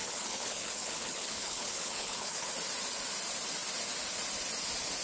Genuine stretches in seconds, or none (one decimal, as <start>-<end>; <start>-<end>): 2.5-5.0